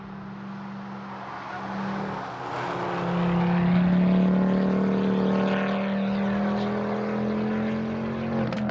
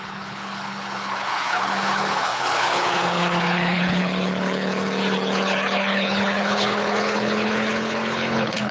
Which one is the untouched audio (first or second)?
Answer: first